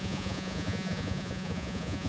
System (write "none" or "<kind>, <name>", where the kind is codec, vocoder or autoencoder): vocoder, Vocos